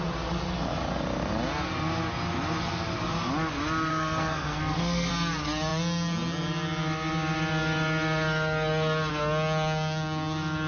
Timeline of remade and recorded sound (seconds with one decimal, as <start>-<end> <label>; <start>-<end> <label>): 0.0-3.9 recorded; 3.9-5.1 remade; 5.1-10.7 recorded